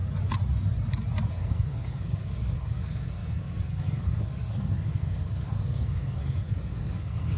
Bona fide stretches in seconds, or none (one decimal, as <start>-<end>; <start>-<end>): 0.0-1.3